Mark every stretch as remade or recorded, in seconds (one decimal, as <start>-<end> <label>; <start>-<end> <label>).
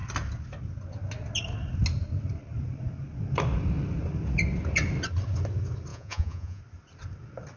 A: 0.0-5.9 recorded; 5.9-6.6 remade; 6.6-7.6 recorded